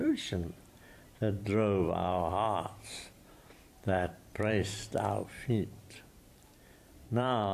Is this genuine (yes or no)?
no